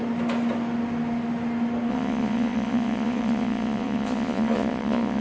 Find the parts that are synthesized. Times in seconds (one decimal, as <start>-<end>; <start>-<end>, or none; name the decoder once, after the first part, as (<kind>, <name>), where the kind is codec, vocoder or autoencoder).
1.9-5.2 (vocoder, Vocos)